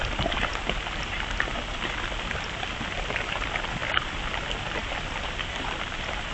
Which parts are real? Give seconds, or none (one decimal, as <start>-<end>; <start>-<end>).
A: 0.0-6.3